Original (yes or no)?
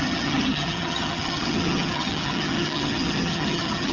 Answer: no